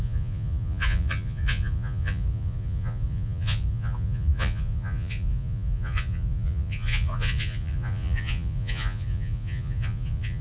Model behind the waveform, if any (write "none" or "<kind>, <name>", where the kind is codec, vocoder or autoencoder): vocoder, Vocos